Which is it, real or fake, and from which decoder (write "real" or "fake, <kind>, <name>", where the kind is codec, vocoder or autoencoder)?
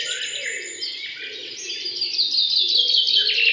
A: real